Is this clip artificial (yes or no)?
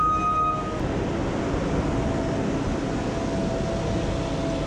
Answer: no